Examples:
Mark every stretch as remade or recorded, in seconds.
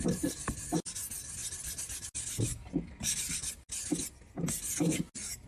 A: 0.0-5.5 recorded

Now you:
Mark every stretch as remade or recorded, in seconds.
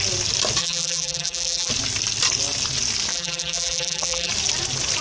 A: 0.0-0.6 recorded; 0.6-1.7 remade; 1.7-3.1 recorded; 3.1-4.3 remade; 4.3-5.0 recorded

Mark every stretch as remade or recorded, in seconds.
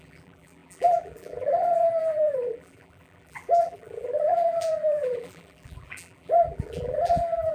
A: 0.0-7.5 remade